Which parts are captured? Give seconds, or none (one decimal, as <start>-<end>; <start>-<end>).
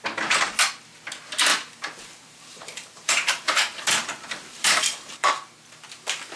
0.0-1.5; 5.3-6.4